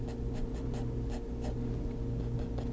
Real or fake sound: real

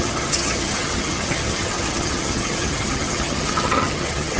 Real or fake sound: fake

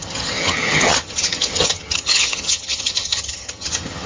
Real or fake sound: fake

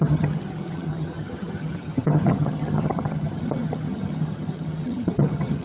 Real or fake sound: fake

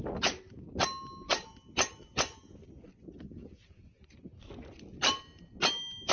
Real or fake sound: real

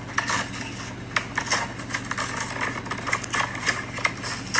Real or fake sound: real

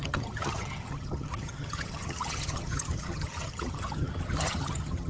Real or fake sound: fake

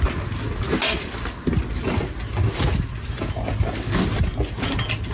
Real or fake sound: real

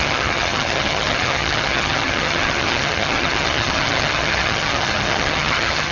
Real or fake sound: fake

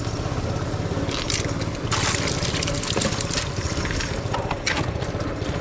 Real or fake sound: real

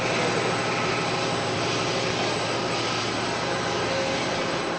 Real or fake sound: real